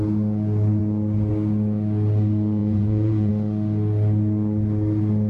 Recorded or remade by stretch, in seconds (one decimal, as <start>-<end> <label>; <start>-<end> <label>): 0.0-2.6 recorded; 2.6-3.3 remade; 3.3-5.3 recorded